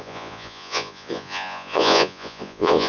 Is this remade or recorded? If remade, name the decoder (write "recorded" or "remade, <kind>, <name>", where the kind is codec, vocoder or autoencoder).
remade, vocoder, Vocos